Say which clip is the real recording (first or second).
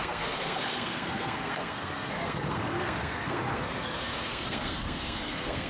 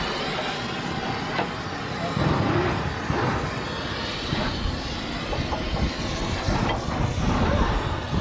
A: second